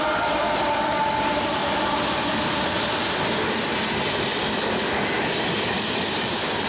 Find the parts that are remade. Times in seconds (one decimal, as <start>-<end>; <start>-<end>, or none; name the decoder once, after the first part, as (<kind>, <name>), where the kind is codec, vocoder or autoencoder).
0.0-1.6 (vocoder, BigVGAN v2); 5.5-6.7